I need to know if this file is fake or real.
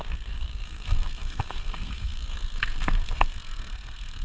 fake